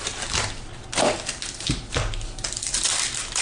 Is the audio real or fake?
real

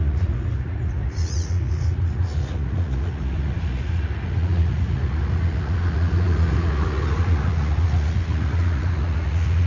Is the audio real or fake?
fake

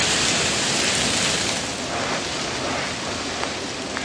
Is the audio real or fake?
real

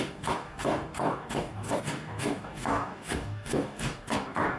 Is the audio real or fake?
fake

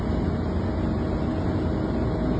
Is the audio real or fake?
real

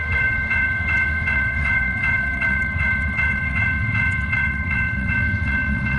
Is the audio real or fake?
fake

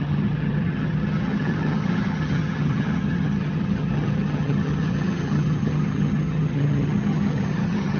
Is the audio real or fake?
fake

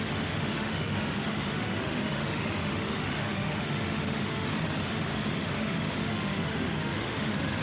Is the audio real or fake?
fake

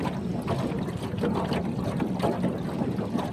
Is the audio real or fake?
real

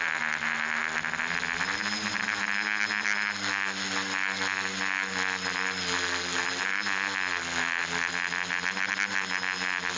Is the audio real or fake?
real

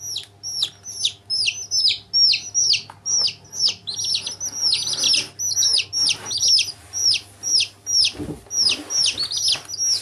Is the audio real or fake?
real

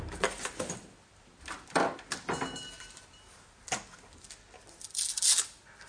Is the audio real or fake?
real